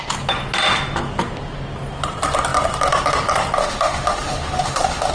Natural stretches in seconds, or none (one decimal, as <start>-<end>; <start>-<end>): 0.0-3.6